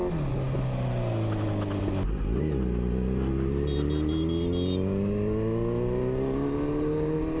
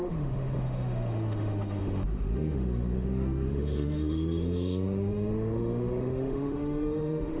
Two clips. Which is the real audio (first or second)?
first